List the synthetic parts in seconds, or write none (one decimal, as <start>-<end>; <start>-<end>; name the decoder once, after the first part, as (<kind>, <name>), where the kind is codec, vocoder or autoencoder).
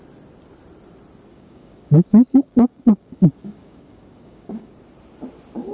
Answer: 1.3-4.7 (codec, DAC)